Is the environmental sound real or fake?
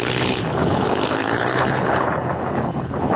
fake